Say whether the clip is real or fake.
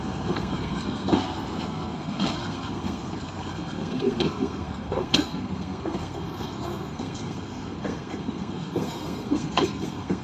fake